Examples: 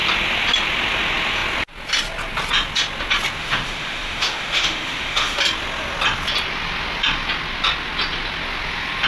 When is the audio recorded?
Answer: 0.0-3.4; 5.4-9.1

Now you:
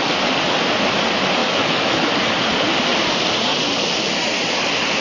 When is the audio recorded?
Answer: 0.0-1.4; 2.1-5.0